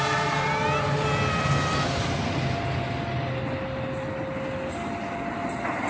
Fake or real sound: real